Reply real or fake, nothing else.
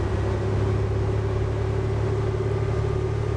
real